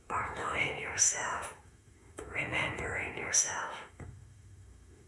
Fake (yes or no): yes